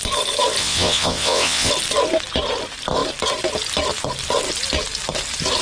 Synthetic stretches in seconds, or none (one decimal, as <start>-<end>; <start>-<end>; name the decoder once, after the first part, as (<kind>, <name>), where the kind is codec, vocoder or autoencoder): 0.6-1.7 (vocoder, WaveNeXt)